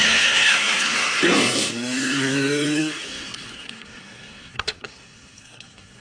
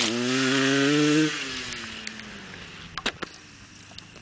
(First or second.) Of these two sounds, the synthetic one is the first